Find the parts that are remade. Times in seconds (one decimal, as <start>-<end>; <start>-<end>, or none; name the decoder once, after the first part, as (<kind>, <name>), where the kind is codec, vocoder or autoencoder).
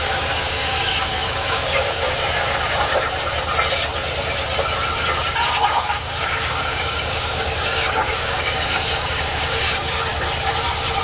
0.0-2.9 (codec, DAC); 5.2-10.1